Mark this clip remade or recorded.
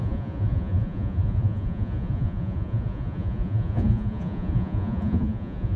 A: remade